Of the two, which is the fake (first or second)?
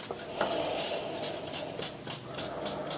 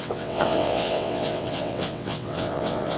second